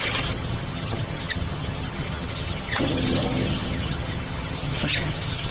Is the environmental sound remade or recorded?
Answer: remade